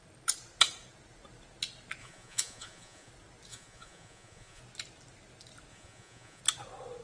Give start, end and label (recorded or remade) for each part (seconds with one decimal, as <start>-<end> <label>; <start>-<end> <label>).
0.0-2.0 recorded; 2.0-3.1 remade; 3.1-3.5 recorded; 3.5-4.6 remade; 4.6-5.7 recorded; 5.7-6.4 remade; 6.4-7.0 recorded